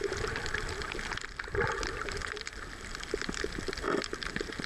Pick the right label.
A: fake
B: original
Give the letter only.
B